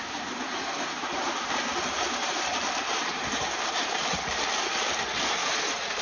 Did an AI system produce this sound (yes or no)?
yes